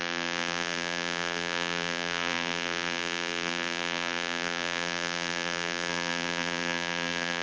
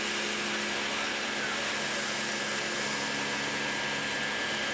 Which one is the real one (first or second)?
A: second